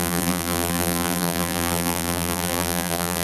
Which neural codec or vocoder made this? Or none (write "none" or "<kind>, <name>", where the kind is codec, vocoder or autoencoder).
vocoder, BigVGAN v2